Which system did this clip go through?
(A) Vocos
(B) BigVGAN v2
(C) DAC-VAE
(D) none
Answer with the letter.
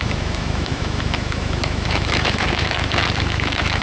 C